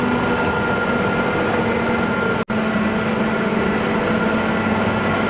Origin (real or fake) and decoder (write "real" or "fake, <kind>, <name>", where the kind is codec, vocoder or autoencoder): real